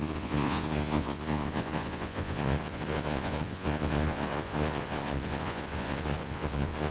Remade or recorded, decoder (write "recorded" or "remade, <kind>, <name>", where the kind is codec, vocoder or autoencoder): remade, vocoder, Vocos